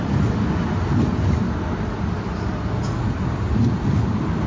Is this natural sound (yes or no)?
yes